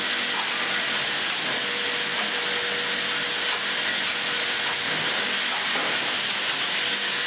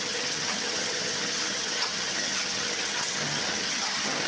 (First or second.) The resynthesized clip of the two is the second